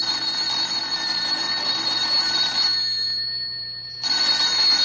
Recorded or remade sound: recorded